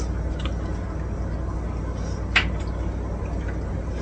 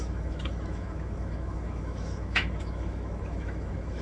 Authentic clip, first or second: first